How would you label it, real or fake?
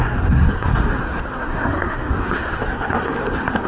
fake